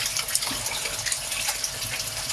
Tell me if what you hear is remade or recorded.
recorded